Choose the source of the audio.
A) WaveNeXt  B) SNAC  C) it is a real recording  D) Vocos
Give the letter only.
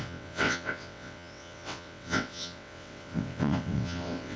A